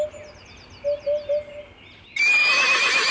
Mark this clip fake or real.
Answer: real